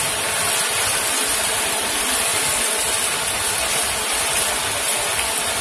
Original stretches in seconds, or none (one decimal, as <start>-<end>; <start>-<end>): 0.0-5.6